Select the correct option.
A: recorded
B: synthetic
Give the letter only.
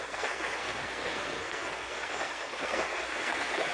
B